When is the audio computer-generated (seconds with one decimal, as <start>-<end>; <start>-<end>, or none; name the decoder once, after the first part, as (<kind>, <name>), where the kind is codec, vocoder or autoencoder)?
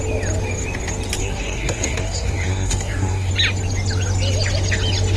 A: 1.2-3.3 (codec, SNAC)